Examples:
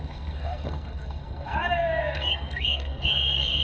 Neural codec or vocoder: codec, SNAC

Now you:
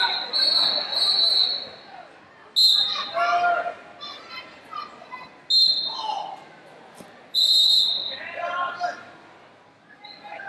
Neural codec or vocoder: none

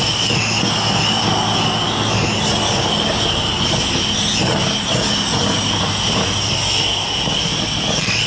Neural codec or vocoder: none